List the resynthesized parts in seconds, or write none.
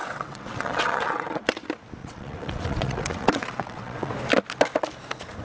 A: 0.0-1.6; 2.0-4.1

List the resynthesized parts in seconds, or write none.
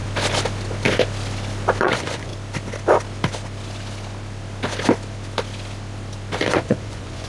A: 1.8-2.3; 6.4-7.3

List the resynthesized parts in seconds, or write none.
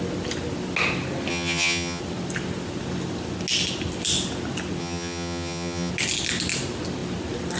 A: 1.3-2.0; 4.8-5.9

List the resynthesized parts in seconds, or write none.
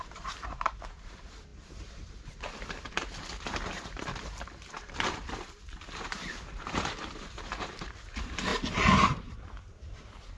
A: 0.0-10.4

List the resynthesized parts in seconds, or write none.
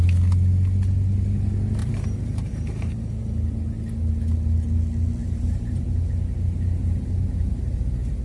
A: 1.8-3.2; 5.2-5.8; 6.8-8.2